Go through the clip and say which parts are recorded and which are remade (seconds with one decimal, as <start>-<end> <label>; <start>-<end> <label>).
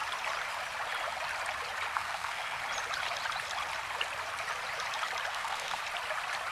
0.0-1.9 recorded; 1.9-2.6 remade; 2.6-5.3 recorded; 5.3-5.8 remade; 5.8-6.5 recorded